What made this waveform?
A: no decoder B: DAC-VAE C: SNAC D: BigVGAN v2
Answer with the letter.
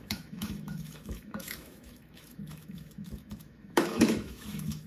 B